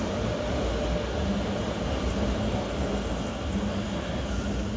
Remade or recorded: recorded